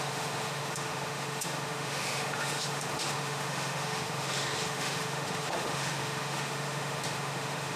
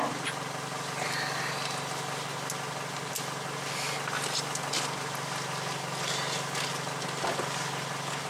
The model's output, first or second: first